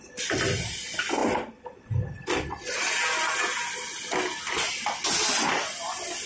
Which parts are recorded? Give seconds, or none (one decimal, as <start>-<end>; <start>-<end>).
0.0-6.3